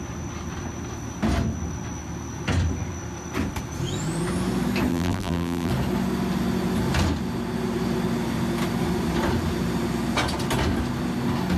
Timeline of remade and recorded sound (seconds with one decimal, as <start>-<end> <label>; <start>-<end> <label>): 0.0-4.9 recorded; 4.9-5.7 remade; 5.7-11.6 recorded